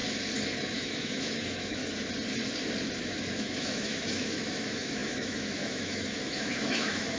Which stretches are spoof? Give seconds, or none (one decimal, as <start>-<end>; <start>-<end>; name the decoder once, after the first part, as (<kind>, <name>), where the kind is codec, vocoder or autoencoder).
0.6-1.8 (autoencoder, DAC-VAE); 3.0-7.2